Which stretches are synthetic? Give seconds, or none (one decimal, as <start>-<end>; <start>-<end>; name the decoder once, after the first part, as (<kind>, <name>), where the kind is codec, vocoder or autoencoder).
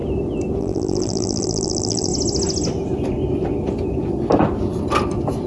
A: 0.6-2.1 (vocoder, BigVGAN v2)